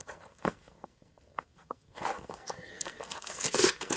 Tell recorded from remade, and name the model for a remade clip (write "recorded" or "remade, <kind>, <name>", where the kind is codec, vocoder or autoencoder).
remade, codec, SNAC